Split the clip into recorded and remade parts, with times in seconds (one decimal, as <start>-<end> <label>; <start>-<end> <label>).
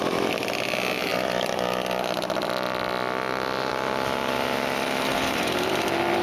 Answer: 0.0-5.1 recorded; 5.1-5.7 remade; 5.7-6.2 recorded